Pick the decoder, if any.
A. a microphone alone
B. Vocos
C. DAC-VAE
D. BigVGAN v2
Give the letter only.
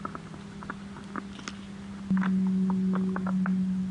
A